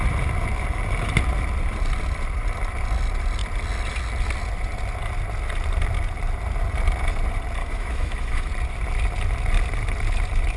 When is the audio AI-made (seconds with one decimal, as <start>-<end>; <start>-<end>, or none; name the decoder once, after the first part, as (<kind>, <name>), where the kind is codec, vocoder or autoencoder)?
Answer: 7.6-8.5 (autoencoder, DAC-VAE)